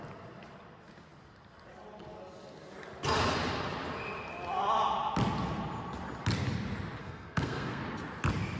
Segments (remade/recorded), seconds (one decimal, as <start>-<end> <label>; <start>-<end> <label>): 0.0-7.0 recorded; 7.0-7.8 remade; 7.8-8.6 recorded